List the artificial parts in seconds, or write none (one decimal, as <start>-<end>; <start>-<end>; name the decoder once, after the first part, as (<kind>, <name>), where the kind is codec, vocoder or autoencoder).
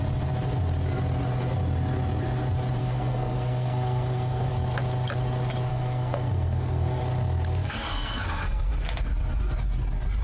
2.8-4.5 (codec, SNAC); 5.7-7.0; 7.6-8.7